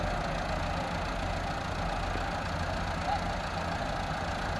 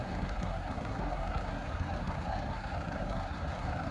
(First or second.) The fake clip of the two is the second